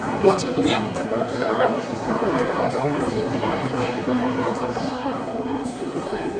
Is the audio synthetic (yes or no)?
yes